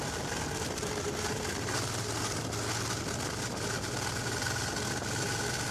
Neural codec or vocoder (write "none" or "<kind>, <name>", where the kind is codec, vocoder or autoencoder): none